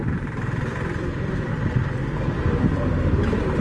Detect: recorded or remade remade